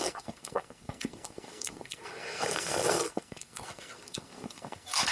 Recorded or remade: remade